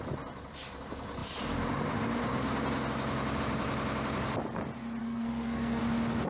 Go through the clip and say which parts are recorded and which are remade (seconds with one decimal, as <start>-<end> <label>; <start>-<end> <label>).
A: 0.0-5.0 recorded; 5.0-5.8 remade; 5.8-6.3 recorded